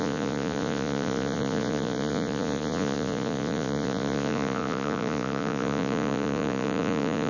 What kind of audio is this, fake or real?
fake